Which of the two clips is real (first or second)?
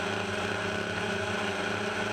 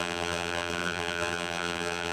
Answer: first